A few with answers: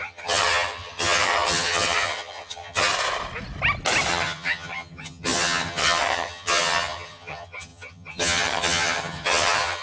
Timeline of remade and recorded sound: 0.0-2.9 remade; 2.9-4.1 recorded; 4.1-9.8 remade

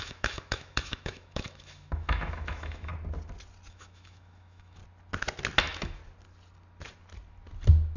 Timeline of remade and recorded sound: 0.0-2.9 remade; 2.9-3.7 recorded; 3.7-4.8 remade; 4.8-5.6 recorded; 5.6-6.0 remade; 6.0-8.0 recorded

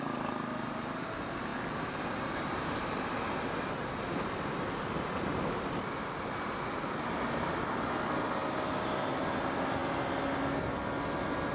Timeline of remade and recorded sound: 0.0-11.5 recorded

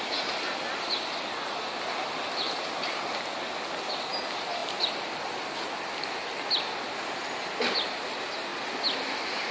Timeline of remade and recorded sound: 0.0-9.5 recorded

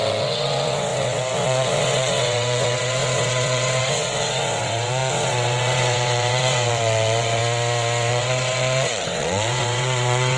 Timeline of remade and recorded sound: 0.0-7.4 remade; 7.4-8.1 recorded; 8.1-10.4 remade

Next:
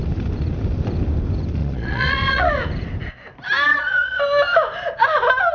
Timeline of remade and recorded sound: 0.0-1.6 recorded; 1.6-2.5 remade; 2.5-3.7 recorded; 3.7-4.2 remade; 4.2-5.5 recorded